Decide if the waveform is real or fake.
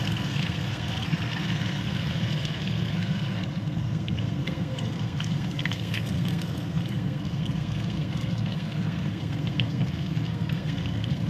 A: fake